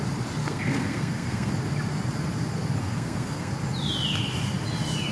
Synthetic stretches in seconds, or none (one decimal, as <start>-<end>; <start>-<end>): 0.4-1.5; 2.8-3.5